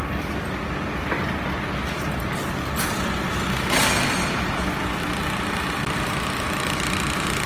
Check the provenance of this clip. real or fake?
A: real